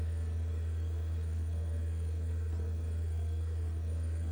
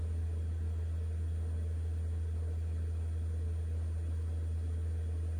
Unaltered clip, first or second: second